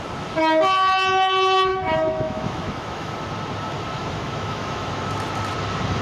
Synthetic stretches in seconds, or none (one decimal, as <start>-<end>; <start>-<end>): 1.7-3.1; 4.0-4.9